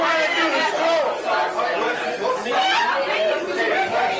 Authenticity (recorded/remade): recorded